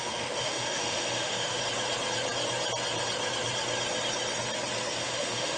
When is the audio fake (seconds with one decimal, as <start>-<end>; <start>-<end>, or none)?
0.0-1.6; 5.0-5.6